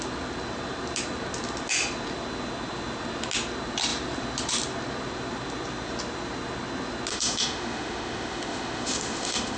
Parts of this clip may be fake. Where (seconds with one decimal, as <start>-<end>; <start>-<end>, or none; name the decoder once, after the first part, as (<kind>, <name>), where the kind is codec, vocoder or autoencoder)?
7.1-9.6 (autoencoder, DAC-VAE)